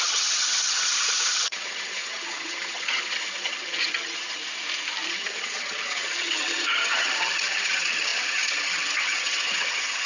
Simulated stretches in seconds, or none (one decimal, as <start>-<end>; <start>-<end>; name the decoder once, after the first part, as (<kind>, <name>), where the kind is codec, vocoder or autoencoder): 0.0-4.4 (vocoder, HiFi-GAN); 5.1-10.1